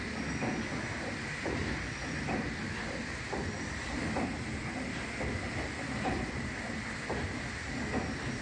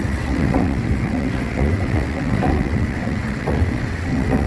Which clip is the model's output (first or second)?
second